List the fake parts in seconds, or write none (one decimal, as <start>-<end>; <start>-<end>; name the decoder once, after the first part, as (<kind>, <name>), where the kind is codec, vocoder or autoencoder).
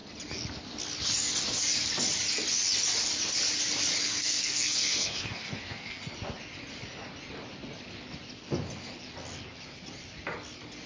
4.1-6.0 (codec, SNAC)